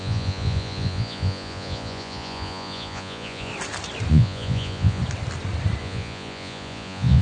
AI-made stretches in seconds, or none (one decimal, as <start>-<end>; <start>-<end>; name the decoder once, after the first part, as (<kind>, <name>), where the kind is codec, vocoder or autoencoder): 0.0-3.5 (vocoder, Vocos); 4.1-5.0; 5.8-7.2